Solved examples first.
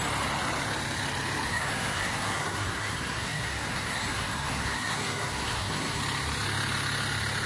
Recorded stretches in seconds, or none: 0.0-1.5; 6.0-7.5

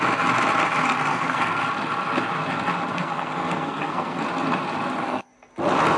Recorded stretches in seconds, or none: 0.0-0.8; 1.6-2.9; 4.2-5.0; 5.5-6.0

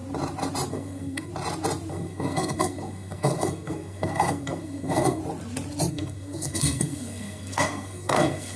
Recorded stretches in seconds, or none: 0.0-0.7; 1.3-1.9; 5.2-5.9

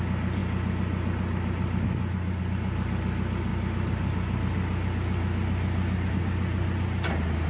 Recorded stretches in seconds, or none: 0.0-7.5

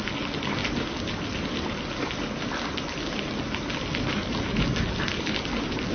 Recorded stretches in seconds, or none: 0.0-5.9

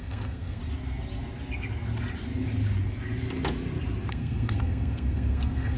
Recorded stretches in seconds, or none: 0.6-4.1

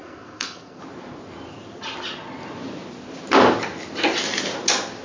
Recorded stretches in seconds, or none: 0.8-5.0